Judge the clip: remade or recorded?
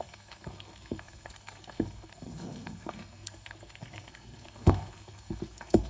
remade